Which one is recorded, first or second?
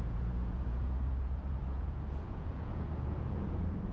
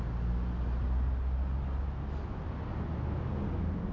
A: second